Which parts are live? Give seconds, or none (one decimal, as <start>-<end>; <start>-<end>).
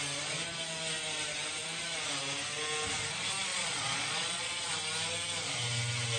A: 0.0-3.5; 4.7-6.2